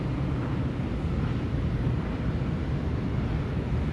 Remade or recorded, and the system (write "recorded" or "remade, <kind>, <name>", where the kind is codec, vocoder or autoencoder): recorded